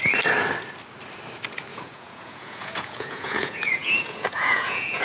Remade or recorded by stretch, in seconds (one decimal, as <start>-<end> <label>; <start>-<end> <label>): 0.0-1.7 recorded; 1.7-5.0 remade